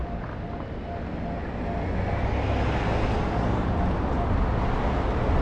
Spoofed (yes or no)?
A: no